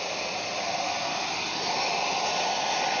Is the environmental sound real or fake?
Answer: real